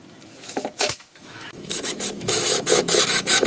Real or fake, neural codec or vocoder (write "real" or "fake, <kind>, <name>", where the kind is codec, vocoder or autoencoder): fake, autoencoder, DAC-VAE